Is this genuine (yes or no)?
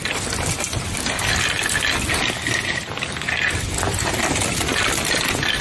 yes